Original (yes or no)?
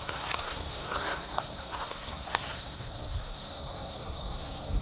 no